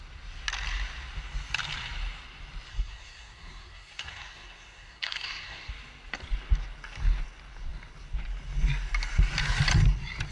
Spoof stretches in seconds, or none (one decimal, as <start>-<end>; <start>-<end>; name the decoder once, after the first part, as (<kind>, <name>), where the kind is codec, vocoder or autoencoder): 2.7-5.7 (codec, SNAC)